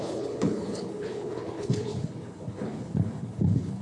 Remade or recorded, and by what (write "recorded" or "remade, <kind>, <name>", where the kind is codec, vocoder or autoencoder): remade, codec, HILCodec